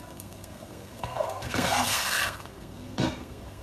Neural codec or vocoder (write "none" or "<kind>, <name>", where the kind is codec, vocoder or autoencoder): codec, SNAC